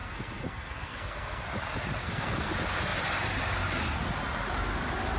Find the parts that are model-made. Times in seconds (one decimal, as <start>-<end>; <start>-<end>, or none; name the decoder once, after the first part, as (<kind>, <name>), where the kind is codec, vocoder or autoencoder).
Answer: 0.0-1.4 (codec, SNAC); 2.0-2.5